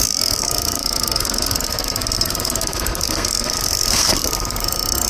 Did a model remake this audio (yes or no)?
yes